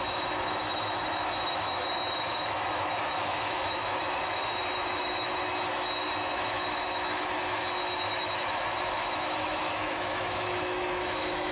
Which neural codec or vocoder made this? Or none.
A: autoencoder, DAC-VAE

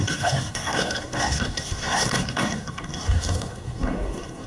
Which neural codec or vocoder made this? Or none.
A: codec, SNAC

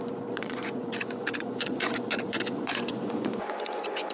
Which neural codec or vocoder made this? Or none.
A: vocoder, Vocos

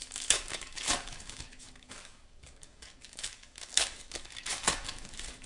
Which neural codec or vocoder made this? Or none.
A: codec, DAC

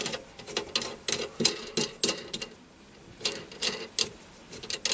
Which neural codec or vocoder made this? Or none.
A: none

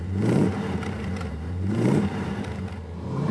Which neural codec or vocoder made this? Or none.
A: vocoder, BigVGAN v2